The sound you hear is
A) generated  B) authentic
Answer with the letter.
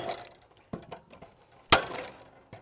B